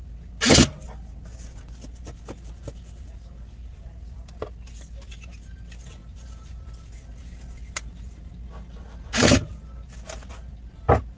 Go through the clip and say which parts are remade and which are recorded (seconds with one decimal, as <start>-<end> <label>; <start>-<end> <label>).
0.0-11.2 recorded